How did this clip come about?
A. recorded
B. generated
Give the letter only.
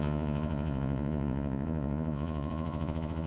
B